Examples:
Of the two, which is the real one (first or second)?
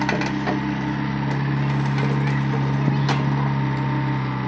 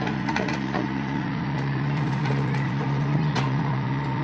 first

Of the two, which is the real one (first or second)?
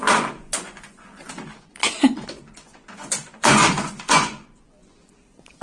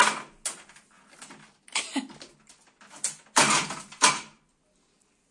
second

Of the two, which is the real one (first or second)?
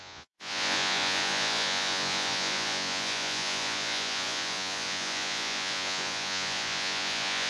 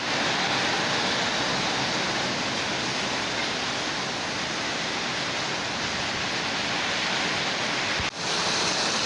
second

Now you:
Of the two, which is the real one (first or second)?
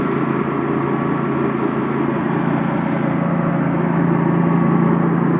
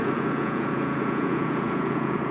first